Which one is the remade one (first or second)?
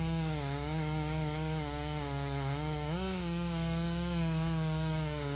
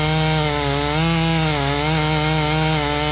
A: first